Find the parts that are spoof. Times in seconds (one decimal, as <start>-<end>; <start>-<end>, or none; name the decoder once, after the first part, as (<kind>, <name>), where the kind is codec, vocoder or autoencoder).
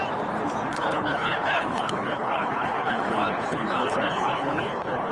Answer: 0.7-5.1 (codec, HILCodec)